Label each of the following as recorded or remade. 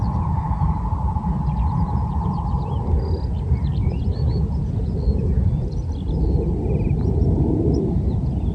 recorded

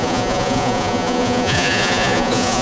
remade